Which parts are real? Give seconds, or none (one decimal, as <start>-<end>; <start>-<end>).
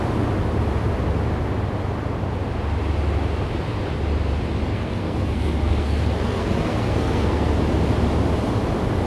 0.0-4.7; 7.5-9.1